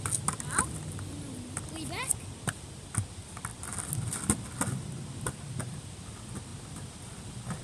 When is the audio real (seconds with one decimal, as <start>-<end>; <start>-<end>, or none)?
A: 0.0-7.6